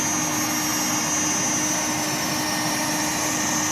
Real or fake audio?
real